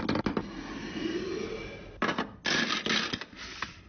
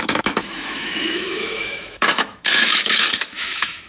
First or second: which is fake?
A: second